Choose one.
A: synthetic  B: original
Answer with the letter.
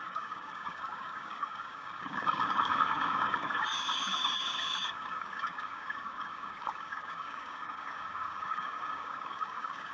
A